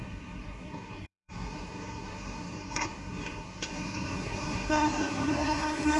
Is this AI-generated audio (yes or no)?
yes